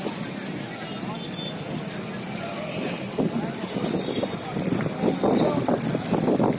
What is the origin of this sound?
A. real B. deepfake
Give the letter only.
A